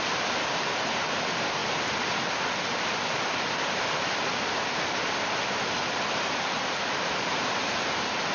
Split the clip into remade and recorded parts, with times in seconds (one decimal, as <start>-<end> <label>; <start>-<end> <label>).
0.0-1.6 remade; 1.6-4.9 recorded; 4.9-8.3 remade